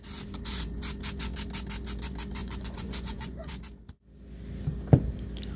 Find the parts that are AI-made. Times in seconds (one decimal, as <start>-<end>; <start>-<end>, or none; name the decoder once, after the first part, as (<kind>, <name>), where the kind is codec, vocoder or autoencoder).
2.4-3.6 (vocoder, Vocos)

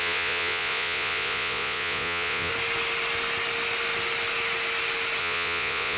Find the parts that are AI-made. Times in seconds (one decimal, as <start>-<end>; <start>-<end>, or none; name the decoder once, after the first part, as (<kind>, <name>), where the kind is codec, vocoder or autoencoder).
0.0-2.5 (vocoder, Vocos); 5.2-6.0

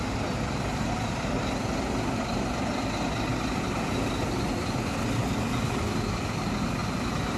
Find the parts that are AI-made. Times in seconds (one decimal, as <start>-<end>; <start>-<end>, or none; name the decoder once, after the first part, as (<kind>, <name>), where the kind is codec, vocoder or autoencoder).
none